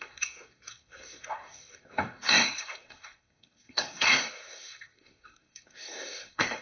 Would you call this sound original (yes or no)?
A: no